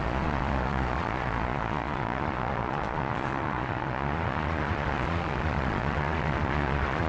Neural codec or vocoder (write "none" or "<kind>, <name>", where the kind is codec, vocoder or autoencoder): vocoder, Vocos